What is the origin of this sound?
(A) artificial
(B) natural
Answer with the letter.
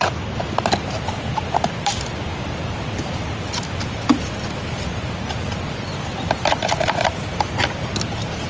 B